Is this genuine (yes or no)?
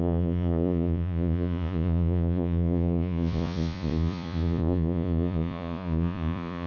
no